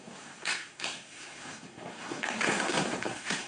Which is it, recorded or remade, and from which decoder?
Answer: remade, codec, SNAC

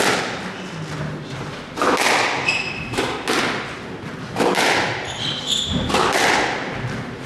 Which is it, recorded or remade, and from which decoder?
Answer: recorded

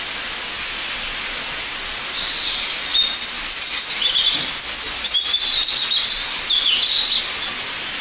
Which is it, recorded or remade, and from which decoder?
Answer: recorded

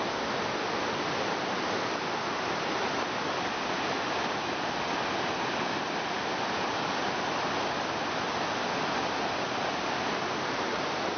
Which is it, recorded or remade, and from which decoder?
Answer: recorded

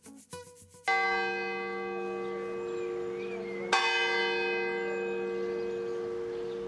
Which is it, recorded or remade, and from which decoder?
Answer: recorded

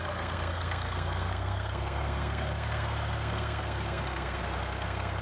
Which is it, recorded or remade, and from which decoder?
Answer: remade, codec, SNAC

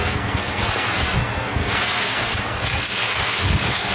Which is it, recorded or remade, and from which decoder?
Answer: remade, codec, SNAC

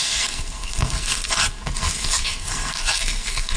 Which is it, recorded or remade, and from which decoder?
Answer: remade, codec, SNAC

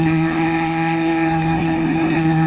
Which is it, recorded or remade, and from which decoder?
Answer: remade, codec, SNAC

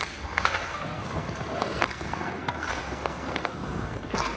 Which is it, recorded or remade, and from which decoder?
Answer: remade, codec, SNAC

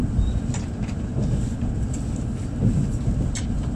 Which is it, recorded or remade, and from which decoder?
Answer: recorded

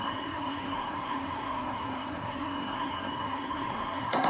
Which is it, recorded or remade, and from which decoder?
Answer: remade, codec, SNAC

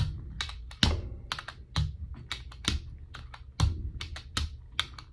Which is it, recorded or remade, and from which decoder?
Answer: recorded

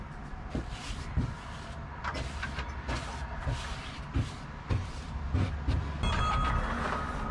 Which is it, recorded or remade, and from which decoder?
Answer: recorded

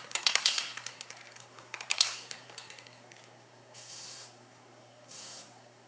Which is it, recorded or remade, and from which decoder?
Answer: remade, codec, SNAC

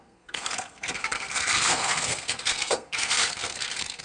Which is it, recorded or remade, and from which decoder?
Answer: remade, codec, SNAC